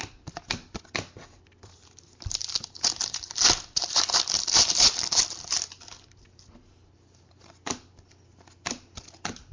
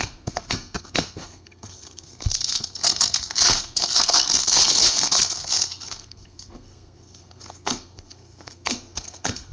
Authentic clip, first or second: first